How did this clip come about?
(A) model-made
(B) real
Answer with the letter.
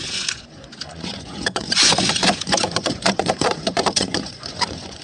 A